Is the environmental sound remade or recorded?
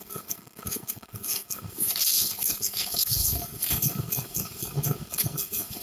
remade